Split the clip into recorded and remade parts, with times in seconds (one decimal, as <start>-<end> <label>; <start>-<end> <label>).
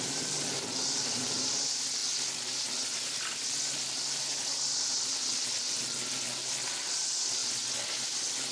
0.0-8.5 recorded